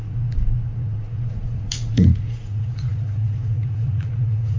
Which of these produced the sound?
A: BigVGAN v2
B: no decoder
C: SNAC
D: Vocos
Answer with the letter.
D